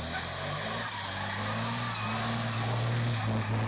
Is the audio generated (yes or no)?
no